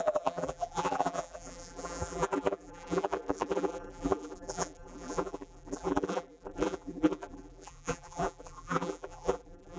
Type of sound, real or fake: fake